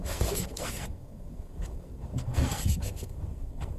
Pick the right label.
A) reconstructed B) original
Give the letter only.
A